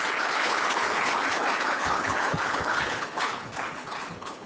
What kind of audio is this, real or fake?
fake